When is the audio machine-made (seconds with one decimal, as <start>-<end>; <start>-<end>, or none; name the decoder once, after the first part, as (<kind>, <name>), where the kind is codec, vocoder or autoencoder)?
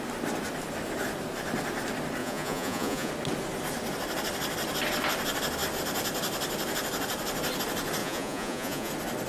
2.2-3.1 (vocoder, Vocos); 8.0-8.9